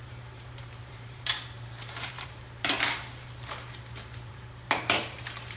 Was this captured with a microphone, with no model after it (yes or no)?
no